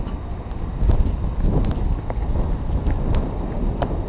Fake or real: real